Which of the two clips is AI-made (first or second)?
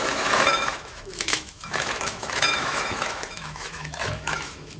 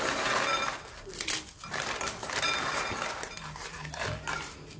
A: first